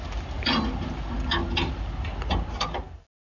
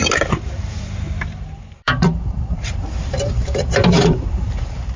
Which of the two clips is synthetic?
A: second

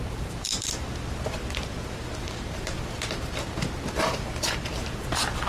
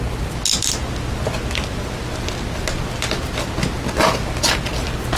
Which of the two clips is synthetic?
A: first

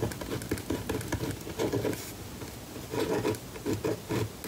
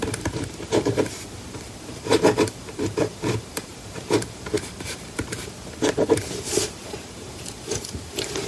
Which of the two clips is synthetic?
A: second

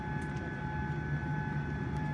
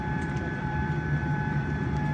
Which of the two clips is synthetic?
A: second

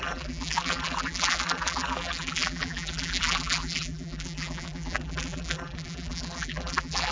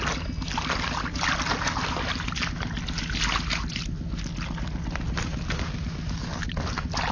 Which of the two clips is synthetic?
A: first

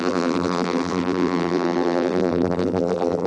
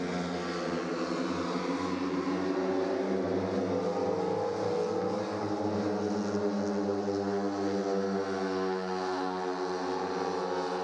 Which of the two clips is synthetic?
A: first